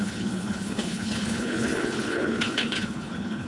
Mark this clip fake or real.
fake